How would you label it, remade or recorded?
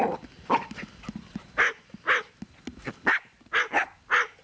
recorded